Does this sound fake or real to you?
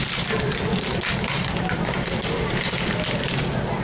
fake